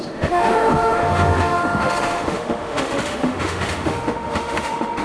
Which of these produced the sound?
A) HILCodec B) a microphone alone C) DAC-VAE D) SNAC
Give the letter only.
C